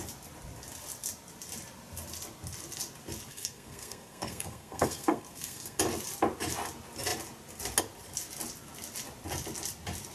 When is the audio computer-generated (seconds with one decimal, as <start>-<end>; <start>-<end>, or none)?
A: 3.3-5.8